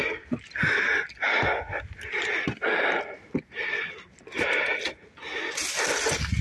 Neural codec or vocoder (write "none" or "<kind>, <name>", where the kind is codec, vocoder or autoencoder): none